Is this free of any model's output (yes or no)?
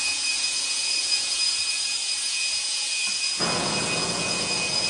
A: no